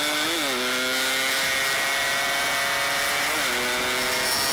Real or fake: real